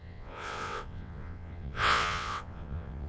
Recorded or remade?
remade